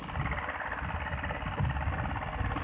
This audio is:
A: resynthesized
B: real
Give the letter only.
B